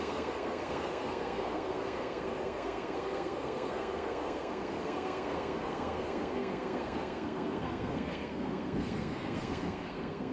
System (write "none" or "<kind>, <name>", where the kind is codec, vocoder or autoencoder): codec, SNAC